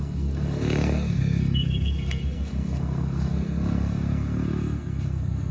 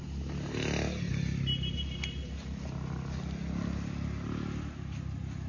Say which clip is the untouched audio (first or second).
second